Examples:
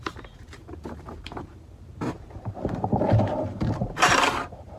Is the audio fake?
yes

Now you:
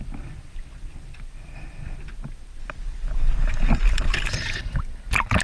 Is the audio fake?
no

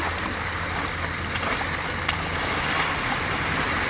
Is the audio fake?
no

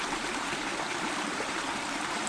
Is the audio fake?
yes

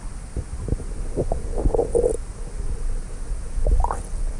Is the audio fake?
no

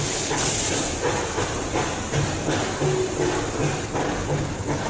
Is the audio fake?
no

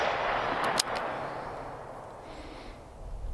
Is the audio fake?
no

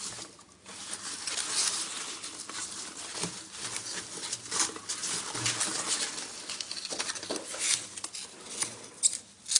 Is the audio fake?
no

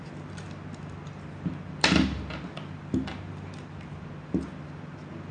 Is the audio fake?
yes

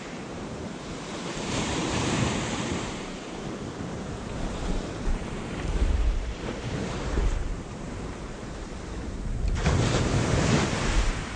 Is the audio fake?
yes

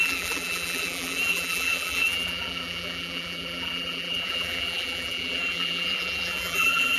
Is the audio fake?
yes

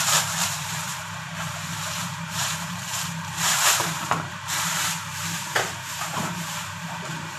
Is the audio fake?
yes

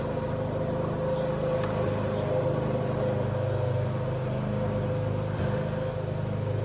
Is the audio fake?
no